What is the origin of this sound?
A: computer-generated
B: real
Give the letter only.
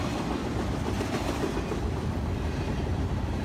B